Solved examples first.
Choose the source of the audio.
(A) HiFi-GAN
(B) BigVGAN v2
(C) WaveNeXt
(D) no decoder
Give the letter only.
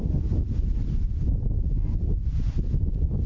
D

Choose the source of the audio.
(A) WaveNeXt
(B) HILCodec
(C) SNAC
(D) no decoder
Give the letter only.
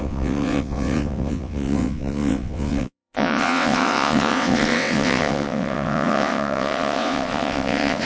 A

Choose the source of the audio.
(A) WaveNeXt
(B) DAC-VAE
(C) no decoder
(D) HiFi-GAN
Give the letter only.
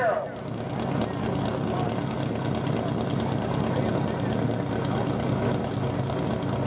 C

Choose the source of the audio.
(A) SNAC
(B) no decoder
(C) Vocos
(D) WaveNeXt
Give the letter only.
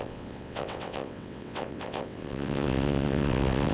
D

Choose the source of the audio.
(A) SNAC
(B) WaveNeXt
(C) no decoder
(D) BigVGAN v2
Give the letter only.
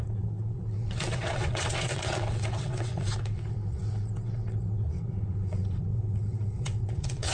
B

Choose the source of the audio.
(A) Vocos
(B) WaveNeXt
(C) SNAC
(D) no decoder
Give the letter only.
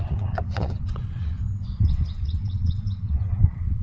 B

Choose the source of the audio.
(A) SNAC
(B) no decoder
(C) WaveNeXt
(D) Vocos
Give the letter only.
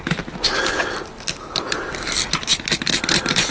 B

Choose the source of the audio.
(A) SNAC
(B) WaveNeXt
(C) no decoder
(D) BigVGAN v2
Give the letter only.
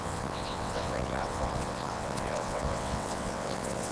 B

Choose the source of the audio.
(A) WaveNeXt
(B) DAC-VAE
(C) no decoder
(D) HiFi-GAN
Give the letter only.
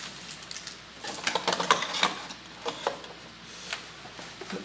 C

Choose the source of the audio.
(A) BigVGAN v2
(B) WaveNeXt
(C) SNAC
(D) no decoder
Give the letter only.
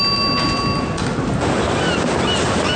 D